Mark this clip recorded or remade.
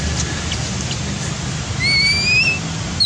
recorded